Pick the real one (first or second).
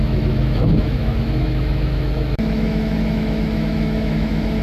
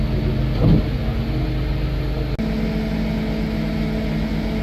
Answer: second